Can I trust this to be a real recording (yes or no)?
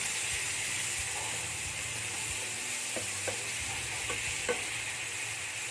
yes